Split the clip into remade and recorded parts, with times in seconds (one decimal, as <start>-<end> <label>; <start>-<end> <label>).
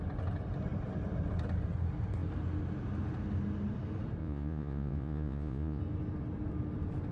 0.0-4.2 recorded; 4.2-5.8 remade; 5.8-7.1 recorded